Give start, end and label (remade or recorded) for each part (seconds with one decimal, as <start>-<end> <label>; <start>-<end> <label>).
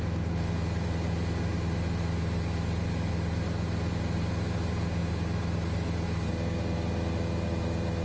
0.0-8.0 recorded